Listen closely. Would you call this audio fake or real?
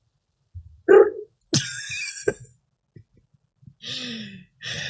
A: real